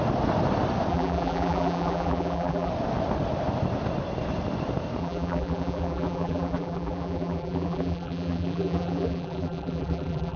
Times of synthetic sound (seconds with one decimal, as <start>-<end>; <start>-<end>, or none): 0.9-2.7; 5.0-10.4